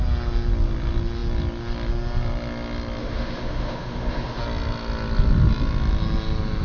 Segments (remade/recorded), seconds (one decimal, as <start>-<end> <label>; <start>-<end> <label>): 0.0-3.0 recorded; 3.0-4.4 remade; 4.4-6.6 recorded